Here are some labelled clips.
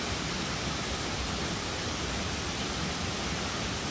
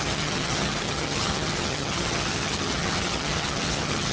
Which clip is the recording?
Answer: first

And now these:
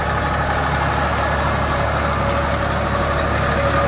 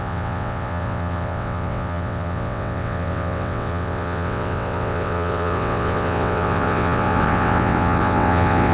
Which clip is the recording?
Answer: first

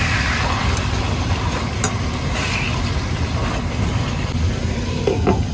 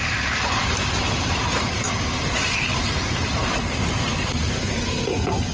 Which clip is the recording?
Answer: first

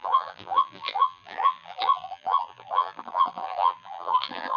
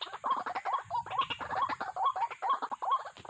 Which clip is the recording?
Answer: second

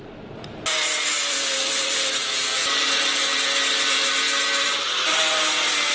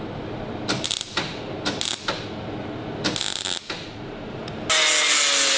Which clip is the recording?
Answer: second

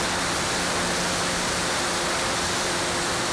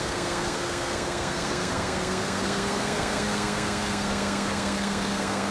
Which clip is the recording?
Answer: first